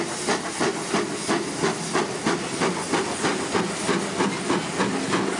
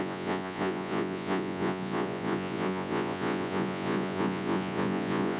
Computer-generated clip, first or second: second